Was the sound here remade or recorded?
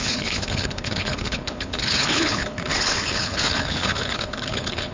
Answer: remade